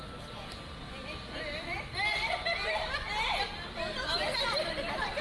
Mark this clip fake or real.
real